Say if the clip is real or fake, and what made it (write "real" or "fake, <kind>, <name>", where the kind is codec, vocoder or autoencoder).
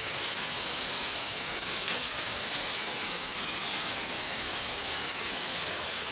fake, codec, SNAC